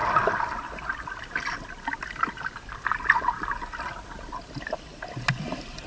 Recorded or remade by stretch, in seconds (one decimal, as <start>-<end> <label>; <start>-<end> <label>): 0.0-5.9 recorded